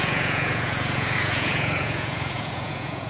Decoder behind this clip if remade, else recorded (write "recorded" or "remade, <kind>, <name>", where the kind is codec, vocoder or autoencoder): remade, vocoder, Vocos